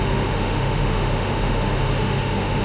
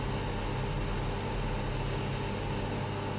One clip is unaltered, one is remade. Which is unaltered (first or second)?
second